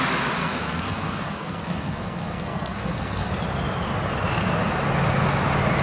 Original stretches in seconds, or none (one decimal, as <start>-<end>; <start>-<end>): 0.0-0.4; 3.3-5.8